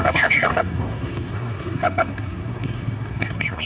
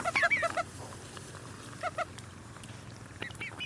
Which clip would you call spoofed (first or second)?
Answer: first